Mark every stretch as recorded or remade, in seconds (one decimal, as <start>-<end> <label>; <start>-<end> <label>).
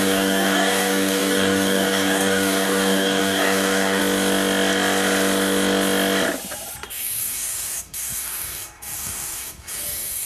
0.0-4.0 remade; 4.0-6.9 recorded; 6.9-10.3 remade